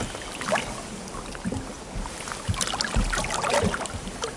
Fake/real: real